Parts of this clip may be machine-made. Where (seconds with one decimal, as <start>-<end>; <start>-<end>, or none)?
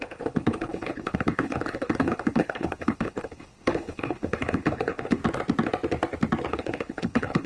0.0-5.2; 6.5-7.5